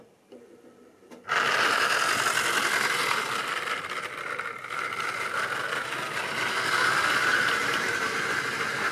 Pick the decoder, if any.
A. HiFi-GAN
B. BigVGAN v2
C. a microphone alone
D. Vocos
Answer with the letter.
C